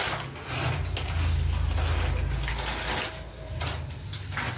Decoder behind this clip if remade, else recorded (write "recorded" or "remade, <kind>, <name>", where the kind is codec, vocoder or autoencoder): recorded